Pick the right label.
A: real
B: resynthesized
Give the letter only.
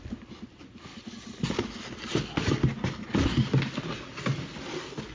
A